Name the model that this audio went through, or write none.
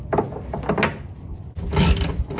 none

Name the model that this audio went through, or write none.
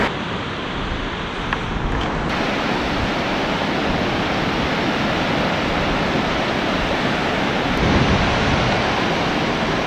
none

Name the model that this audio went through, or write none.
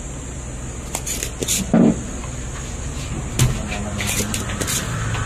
none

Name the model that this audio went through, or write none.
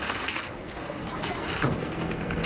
codec, SNAC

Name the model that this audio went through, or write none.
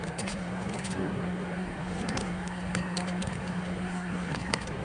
codec, SNAC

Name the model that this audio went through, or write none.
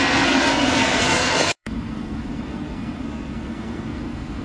codec, SNAC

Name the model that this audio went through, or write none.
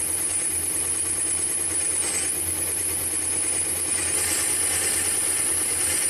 none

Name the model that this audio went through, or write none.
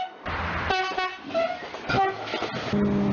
none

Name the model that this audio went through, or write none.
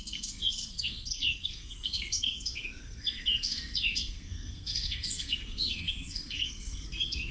codec, SNAC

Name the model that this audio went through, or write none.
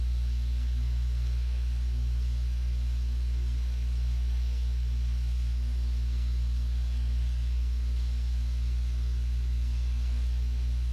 codec, SNAC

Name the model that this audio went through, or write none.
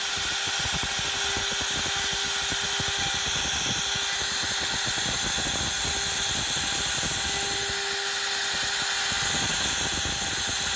none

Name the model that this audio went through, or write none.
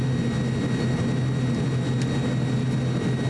none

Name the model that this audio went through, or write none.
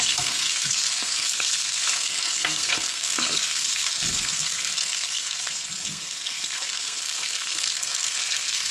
codec, SNAC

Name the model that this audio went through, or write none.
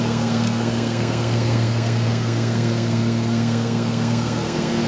codec, SNAC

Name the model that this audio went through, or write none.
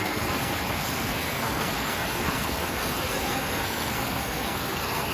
codec, SNAC